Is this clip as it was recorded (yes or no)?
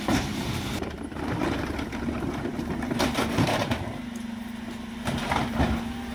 no